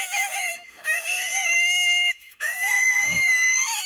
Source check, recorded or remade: remade